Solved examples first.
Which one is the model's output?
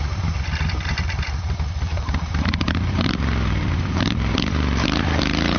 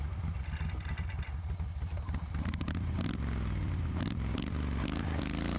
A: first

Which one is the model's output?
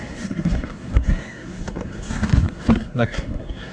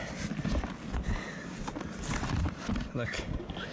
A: first